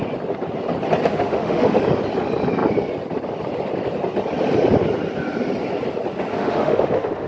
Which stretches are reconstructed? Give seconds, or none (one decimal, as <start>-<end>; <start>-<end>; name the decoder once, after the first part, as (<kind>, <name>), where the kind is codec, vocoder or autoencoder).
1.1-1.8 (autoencoder, DAC-VAE); 6.3-7.3